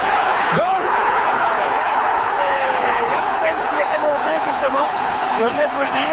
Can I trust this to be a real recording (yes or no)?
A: no